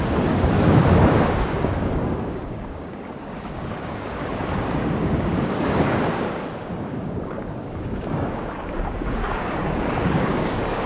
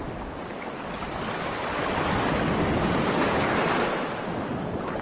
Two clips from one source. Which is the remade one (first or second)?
first